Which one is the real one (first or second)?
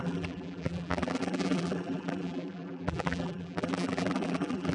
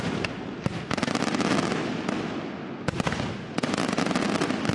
second